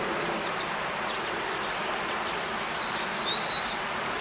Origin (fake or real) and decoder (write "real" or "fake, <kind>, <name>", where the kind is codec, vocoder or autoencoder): real